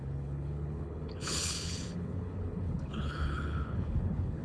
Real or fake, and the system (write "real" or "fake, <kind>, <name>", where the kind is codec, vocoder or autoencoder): fake, codec, HILCodec